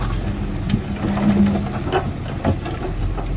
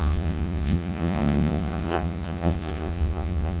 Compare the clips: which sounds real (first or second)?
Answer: first